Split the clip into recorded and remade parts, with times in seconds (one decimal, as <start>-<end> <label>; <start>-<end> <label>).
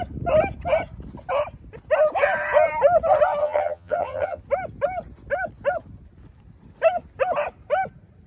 0.0-3.4 recorded; 3.4-4.4 remade; 4.4-8.3 recorded